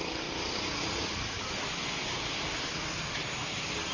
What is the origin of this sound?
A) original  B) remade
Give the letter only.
A